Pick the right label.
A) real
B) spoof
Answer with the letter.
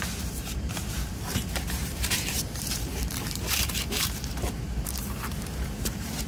B